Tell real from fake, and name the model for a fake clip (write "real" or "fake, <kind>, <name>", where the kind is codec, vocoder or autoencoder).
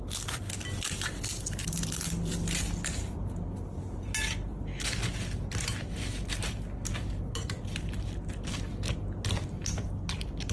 real